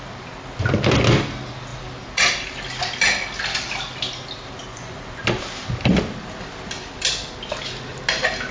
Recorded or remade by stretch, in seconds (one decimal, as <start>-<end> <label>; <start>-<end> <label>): 0.0-4.7 recorded; 4.7-5.2 remade; 5.2-8.5 recorded